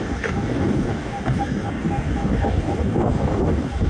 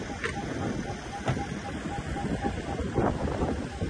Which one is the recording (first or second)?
second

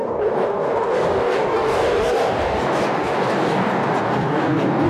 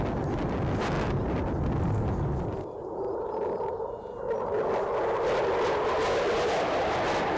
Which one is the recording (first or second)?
second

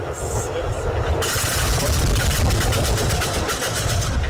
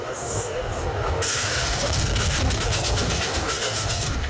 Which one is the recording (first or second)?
first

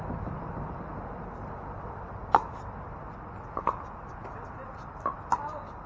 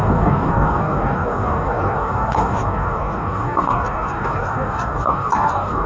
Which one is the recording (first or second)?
first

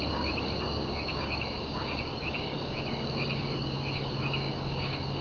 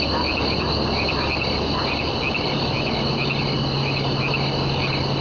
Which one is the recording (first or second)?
second